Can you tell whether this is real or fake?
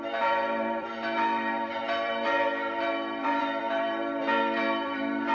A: fake